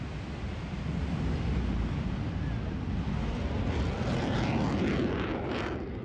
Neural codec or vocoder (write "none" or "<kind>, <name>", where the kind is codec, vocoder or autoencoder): none